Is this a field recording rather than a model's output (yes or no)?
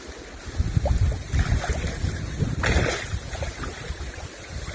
yes